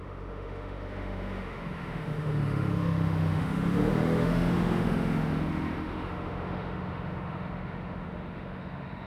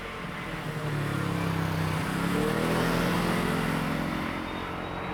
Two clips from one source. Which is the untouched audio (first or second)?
second